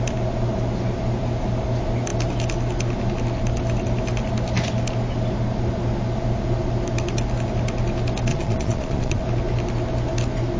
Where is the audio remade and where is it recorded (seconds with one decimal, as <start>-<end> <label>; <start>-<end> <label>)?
0.0-8.3 recorded; 8.3-9.2 remade; 9.2-10.6 recorded